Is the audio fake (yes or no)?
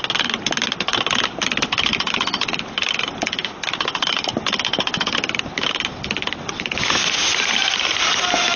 no